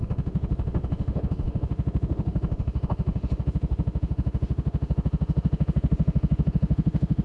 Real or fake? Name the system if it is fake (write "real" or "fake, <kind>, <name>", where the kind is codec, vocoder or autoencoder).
fake, autoencoder, DAC-VAE